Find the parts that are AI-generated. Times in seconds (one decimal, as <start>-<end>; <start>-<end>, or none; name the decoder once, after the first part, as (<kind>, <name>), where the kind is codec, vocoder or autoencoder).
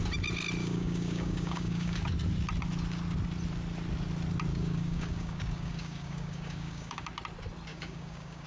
0.6-2.0 (codec, DAC); 4.5-7.1; 7.7-8.5